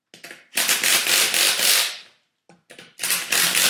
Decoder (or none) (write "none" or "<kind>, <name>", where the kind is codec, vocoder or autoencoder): none